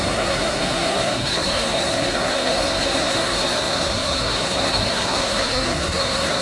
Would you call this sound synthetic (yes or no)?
yes